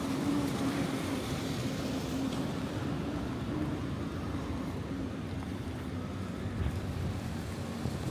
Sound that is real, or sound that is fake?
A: fake